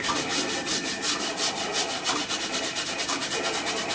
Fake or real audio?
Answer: real